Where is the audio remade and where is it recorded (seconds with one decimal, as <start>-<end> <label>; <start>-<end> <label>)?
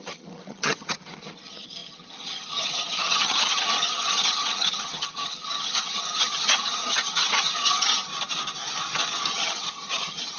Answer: 0.0-8.1 remade; 8.1-9.3 recorded; 9.3-10.4 remade